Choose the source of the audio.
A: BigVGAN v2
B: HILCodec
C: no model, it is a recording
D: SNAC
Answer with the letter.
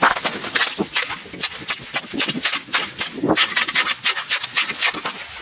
C